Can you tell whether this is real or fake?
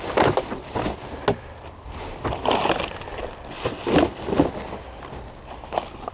real